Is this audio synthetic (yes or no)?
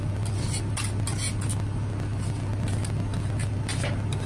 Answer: no